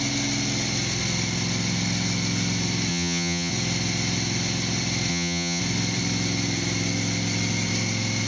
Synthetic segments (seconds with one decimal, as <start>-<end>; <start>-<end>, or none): 2.9-3.5; 5.1-5.6